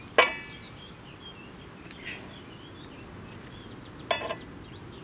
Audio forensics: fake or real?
real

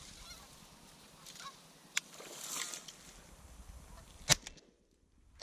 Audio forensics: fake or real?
real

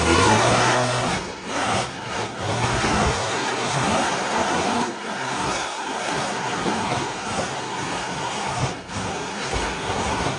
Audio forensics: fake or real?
fake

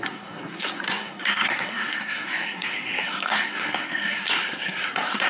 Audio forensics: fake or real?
fake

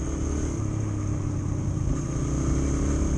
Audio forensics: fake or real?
real